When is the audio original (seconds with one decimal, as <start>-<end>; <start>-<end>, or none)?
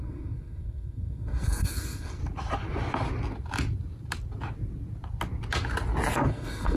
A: 2.2-6.3